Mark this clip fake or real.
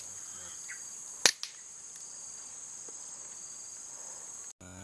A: real